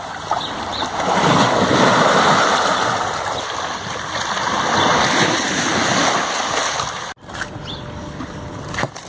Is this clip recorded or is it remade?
recorded